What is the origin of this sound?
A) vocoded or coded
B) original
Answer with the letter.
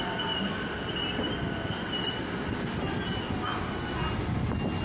B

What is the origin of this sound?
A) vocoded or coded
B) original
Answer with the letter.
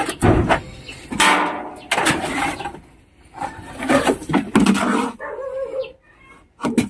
B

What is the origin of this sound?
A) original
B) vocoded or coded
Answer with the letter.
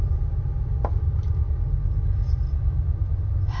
A